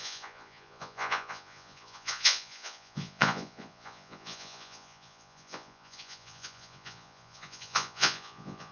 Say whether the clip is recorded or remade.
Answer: remade